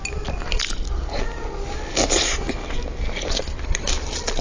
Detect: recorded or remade recorded